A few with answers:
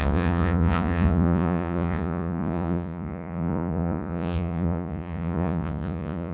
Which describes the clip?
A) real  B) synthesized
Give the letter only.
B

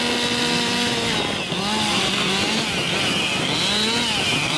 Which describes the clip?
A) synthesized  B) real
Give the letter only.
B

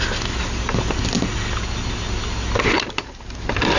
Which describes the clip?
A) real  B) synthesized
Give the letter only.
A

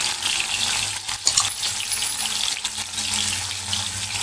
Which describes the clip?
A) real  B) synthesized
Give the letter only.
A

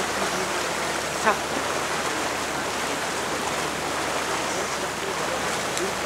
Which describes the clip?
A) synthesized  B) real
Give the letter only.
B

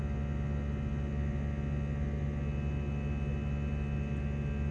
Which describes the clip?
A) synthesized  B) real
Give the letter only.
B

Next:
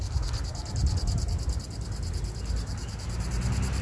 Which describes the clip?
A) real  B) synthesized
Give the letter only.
A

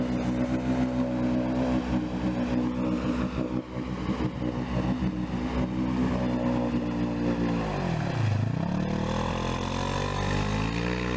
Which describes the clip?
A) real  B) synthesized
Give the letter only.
A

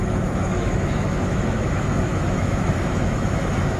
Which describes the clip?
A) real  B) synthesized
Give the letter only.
B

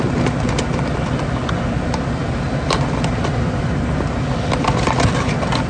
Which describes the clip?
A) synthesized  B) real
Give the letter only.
B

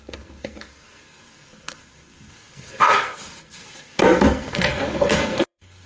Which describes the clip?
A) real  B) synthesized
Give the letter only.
B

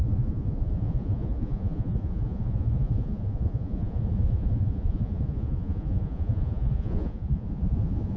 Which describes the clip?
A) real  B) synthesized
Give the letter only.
B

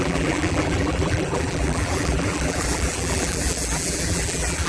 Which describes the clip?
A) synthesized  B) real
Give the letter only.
A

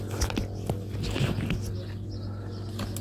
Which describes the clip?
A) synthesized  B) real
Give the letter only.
B